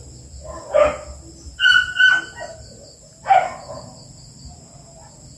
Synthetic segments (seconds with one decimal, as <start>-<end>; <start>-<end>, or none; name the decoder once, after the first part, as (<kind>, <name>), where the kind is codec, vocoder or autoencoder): none